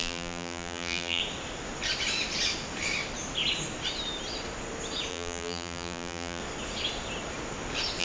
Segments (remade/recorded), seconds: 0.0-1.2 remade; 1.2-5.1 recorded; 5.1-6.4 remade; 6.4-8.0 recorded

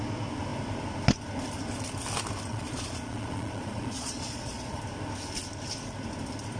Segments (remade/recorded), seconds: 0.0-2.5 recorded; 2.5-4.8 remade; 4.8-6.6 recorded

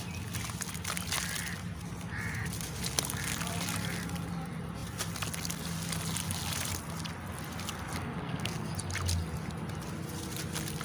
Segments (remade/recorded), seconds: 0.0-8.0 recorded; 8.0-8.7 remade; 8.7-10.8 recorded

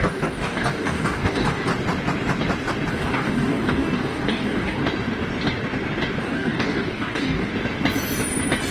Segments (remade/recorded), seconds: 0.0-1.7 remade; 1.7-2.9 recorded; 2.9-4.8 remade; 4.8-6.2 recorded; 6.2-7.5 remade; 7.5-8.7 recorded

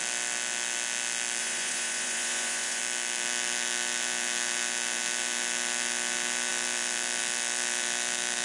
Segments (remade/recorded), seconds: 0.0-1.4 recorded; 1.4-2.8 remade; 2.8-8.4 recorded

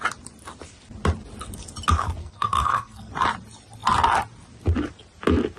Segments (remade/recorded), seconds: 0.0-2.2 recorded; 2.2-3.1 remade; 3.1-5.6 recorded

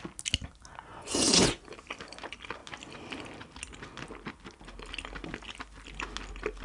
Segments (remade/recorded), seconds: 0.0-0.9 recorded; 0.9-1.7 remade; 1.7-6.6 recorded

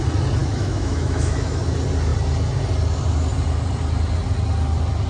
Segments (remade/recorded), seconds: 0.0-0.4 recorded; 0.4-1.6 remade; 1.6-5.1 recorded